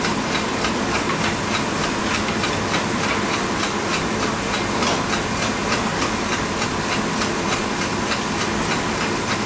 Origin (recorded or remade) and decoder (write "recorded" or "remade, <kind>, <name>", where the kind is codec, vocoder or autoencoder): remade, vocoder, BigVGAN v2